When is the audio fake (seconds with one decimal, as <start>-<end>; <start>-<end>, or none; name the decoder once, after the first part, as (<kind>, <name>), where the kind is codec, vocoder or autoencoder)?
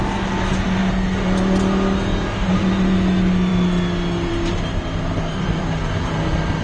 none